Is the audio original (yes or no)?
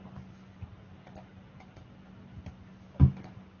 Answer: yes